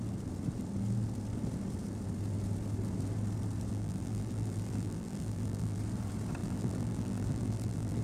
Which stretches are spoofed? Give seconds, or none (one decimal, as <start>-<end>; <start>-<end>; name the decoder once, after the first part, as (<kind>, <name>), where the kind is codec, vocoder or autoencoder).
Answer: 3.7-5.8 (vocoder, BigVGAN v2); 6.4-8.0